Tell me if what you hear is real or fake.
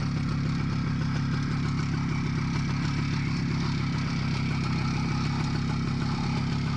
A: real